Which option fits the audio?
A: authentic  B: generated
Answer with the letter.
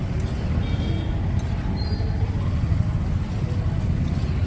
A